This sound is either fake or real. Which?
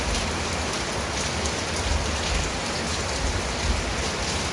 real